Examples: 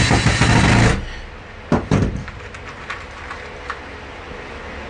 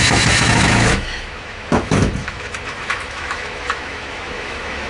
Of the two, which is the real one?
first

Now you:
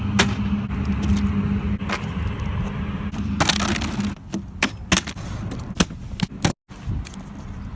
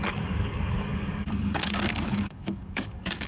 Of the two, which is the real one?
first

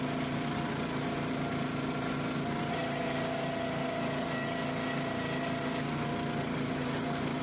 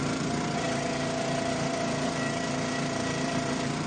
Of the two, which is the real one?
first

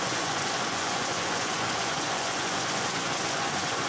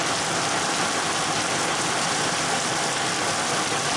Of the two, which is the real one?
second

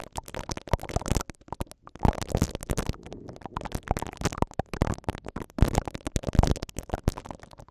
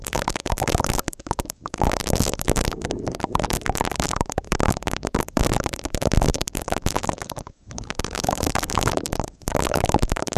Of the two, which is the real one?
first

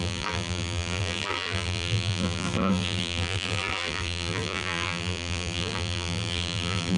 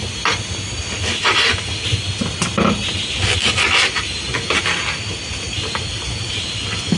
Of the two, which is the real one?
second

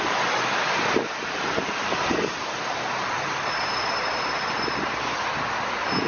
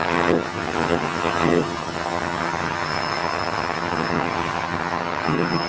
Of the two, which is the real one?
first